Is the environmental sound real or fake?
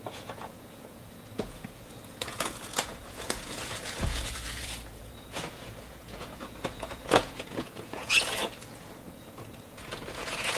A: fake